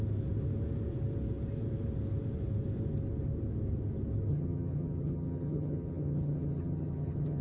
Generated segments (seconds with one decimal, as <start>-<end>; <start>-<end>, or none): 4.3-7.4